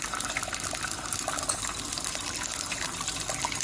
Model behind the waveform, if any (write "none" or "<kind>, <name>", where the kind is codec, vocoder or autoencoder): none